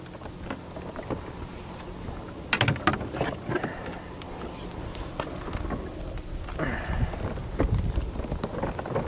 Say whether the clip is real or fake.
real